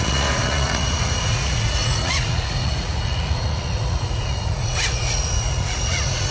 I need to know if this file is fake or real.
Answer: fake